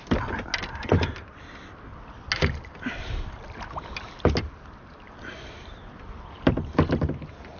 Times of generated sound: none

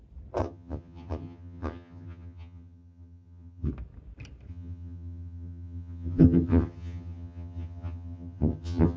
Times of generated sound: 0.4-3.7 (vocoder, HiFi-GAN); 4.5-9.0